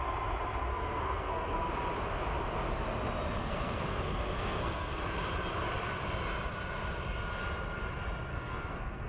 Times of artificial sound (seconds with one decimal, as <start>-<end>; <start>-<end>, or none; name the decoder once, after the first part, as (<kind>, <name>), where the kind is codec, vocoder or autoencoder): 0.7-1.7 (codec, SNAC); 3.4-5.0; 8.3-9.1